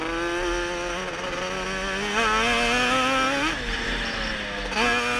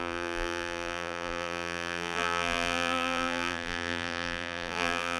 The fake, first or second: second